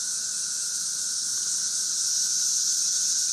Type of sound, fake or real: real